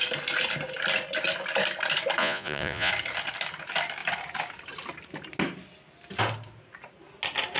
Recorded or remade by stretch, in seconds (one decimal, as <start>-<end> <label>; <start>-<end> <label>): 0.0-2.2 recorded; 2.2-2.9 remade; 2.9-7.6 recorded

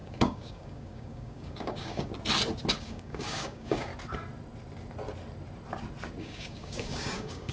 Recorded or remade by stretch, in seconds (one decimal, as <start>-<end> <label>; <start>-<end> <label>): 0.0-2.1 remade; 2.1-2.7 recorded; 2.7-3.9 remade; 3.9-6.2 recorded; 6.2-7.5 remade

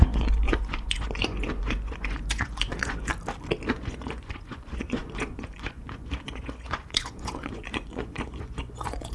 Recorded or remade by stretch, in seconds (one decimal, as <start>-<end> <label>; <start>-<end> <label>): 0.0-3.1 remade; 3.1-3.7 recorded; 3.7-9.1 remade

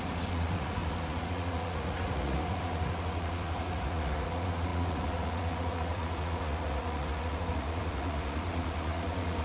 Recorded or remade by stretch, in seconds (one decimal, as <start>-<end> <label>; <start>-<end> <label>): 0.0-9.4 remade

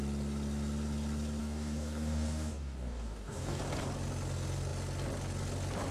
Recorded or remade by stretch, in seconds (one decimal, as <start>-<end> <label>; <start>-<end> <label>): 0.0-1.4 recorded; 1.4-3.6 remade; 3.6-5.9 recorded

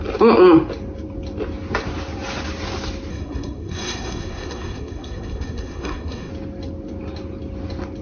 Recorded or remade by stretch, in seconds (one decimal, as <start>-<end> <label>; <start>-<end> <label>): 0.0-3.1 recorded; 3.1-6.3 remade; 6.3-8.0 recorded